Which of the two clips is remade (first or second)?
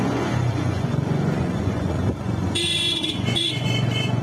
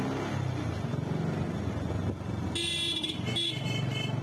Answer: first